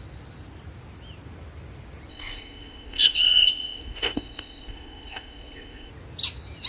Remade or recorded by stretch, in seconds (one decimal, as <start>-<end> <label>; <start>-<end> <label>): 0.0-2.1 recorded; 2.1-5.9 remade; 5.9-6.7 recorded